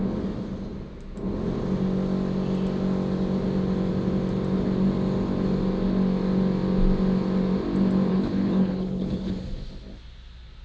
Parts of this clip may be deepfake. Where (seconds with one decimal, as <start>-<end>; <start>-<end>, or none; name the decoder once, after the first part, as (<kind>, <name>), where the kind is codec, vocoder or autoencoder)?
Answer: 8.1-9.3 (codec, HILCodec)